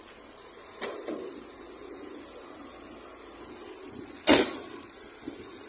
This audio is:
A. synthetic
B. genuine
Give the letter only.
B